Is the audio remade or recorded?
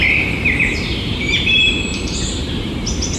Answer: remade